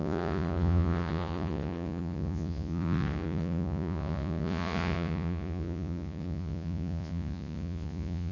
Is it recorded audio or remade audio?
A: remade